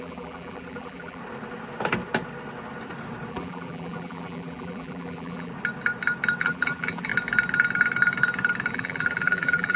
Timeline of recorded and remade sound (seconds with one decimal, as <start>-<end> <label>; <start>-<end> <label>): 0.0-1.2 remade; 1.2-3.3 recorded; 3.3-5.5 remade; 5.5-6.4 recorded; 6.4-7.1 remade; 7.1-8.7 recorded; 8.7-9.8 remade